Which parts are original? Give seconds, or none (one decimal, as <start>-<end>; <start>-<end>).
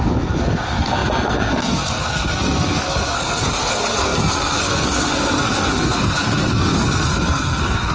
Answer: none